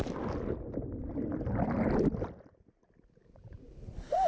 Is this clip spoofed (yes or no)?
no